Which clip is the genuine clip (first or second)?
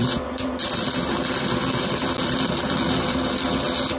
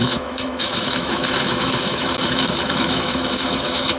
first